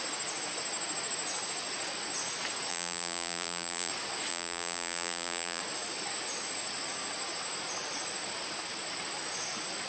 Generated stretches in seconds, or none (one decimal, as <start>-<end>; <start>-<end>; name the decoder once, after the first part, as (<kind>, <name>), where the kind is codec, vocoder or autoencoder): 2.7-3.9 (vocoder, BigVGAN v2); 4.3-5.6